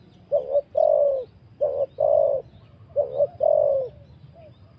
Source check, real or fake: real